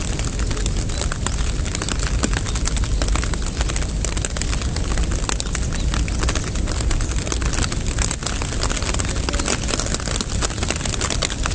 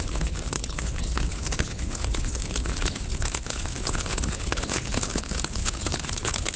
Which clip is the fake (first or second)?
second